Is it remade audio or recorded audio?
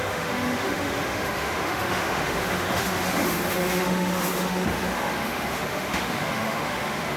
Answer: remade